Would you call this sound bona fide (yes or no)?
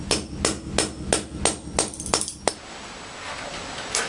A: yes